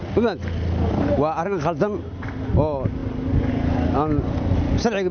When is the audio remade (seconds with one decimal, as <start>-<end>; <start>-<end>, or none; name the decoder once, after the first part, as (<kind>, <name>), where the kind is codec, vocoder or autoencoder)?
none